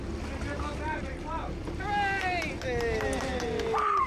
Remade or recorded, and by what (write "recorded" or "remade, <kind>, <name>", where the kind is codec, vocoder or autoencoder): recorded